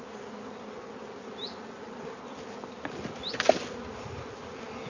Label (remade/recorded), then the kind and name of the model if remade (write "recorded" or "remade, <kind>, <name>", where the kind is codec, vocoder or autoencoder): recorded